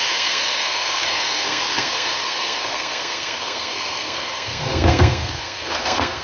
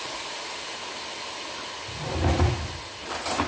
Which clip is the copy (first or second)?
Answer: first